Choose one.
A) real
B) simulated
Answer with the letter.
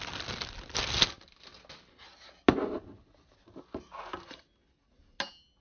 A